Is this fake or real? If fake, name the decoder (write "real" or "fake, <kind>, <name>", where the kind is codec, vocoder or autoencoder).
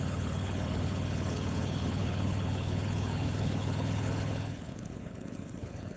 fake, codec, HILCodec